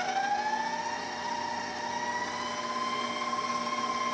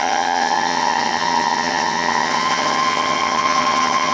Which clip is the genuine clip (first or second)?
first